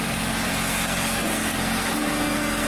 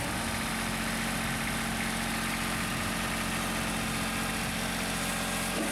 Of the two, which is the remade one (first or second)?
first